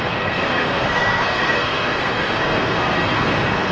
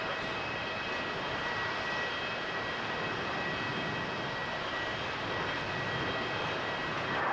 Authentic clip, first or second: second